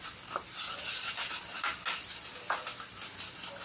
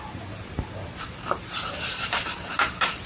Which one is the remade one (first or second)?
second